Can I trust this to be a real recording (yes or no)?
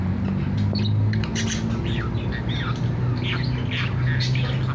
yes